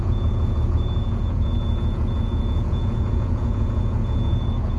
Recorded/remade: remade